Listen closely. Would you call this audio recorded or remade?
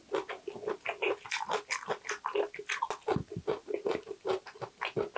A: recorded